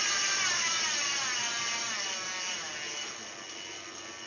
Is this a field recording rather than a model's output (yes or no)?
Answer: yes